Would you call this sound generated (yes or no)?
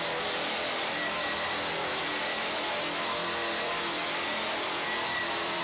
yes